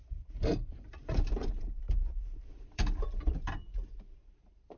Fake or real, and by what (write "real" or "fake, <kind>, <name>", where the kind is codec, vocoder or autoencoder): fake, vocoder, BigVGAN v2